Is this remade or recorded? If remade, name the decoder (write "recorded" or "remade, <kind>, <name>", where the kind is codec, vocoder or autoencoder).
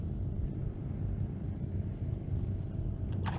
remade, vocoder, BigVGAN v2